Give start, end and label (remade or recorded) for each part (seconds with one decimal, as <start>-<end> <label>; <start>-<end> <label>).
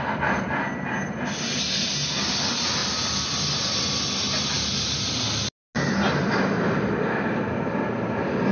0.0-8.5 recorded